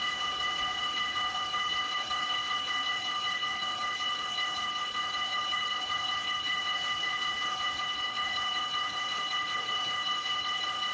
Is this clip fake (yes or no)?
yes